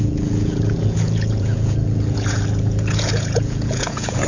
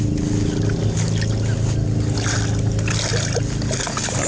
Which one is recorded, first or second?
second